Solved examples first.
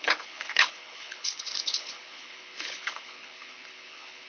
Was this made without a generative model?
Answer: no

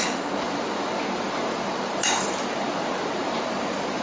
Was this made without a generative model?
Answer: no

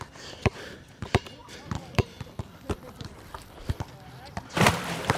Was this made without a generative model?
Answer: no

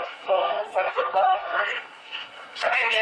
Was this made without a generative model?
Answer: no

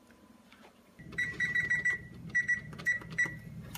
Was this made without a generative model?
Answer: no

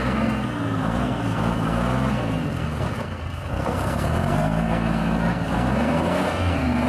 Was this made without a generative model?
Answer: no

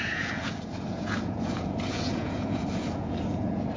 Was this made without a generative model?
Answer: no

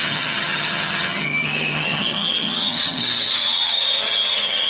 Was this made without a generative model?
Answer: no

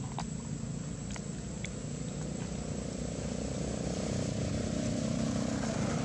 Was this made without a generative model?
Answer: yes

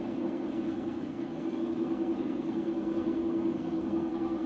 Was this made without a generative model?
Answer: no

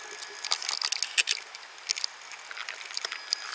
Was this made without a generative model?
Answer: yes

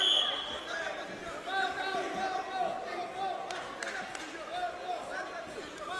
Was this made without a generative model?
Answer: yes